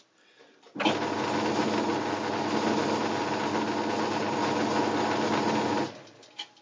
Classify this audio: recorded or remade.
recorded